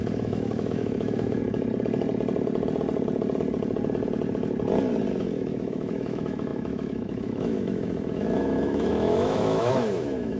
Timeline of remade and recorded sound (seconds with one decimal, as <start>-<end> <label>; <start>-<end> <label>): 0.0-1.4 remade; 1.4-5.2 recorded; 5.2-10.4 remade